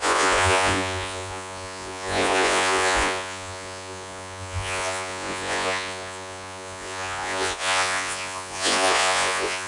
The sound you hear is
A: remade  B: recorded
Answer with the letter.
A